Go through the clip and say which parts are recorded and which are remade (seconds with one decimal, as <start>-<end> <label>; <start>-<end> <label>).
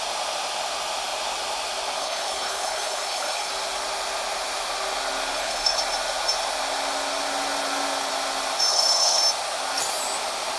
0.0-2.0 recorded; 2.0-3.5 remade; 3.5-5.3 recorded; 5.3-5.8 remade; 5.8-8.7 recorded; 8.7-9.2 remade; 9.2-10.6 recorded